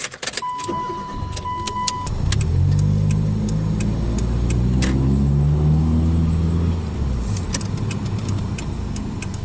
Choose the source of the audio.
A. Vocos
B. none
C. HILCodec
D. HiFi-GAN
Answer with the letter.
B